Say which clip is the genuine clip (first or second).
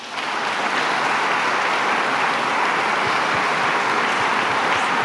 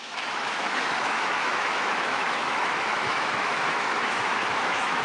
first